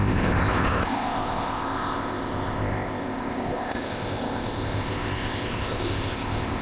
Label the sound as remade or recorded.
remade